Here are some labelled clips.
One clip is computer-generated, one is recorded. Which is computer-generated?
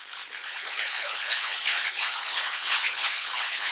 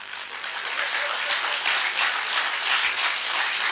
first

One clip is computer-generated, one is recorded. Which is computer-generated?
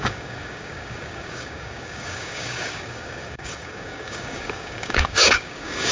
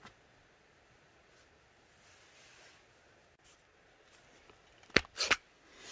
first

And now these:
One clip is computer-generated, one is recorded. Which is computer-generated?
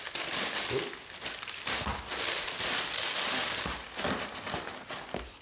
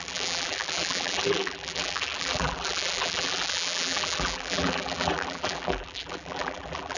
second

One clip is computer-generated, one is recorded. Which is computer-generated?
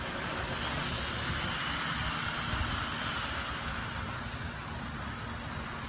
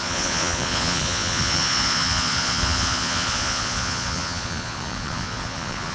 second